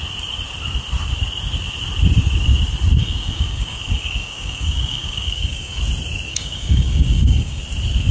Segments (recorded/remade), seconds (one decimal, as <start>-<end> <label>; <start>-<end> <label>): 0.0-3.0 recorded; 3.0-5.8 remade; 5.8-6.3 recorded; 6.3-7.6 remade; 7.6-8.1 recorded